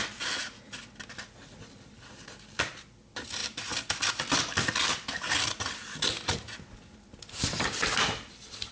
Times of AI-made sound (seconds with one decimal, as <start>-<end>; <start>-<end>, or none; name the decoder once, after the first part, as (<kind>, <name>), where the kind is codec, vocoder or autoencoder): 0.0-5.8 (vocoder, BigVGAN v2); 6.4-8.7